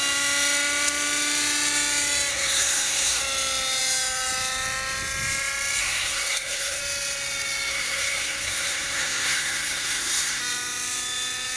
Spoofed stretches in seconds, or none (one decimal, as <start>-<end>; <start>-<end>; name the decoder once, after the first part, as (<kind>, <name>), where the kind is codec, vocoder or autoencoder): 2.3-3.2 (codec, SNAC); 5.8-6.8; 7.7-10.4